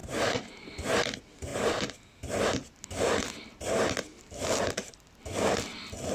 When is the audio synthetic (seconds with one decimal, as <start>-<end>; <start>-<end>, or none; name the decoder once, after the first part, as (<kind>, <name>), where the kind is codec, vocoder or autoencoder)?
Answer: none